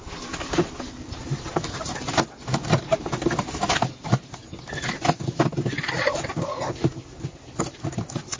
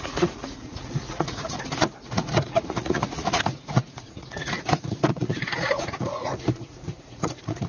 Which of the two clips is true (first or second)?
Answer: first